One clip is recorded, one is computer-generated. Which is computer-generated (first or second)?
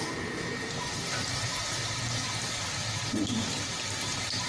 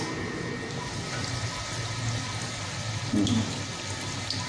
first